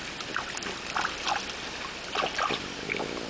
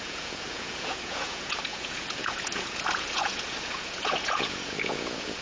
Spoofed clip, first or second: second